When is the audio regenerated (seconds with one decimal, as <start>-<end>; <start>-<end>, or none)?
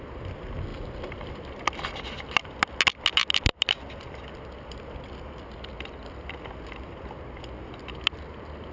0.7-1.4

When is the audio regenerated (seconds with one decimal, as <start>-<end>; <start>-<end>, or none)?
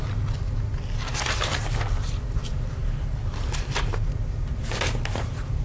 none